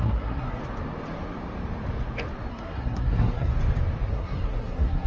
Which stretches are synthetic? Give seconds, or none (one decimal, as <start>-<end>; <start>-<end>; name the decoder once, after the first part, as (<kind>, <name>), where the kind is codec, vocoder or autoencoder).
0.0-0.6 (codec, SNAC); 2.5-3.5; 4.1-5.1